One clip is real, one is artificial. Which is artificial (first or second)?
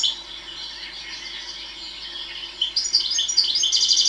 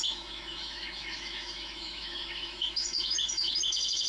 second